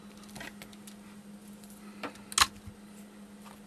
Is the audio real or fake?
real